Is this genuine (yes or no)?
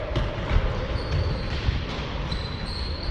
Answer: no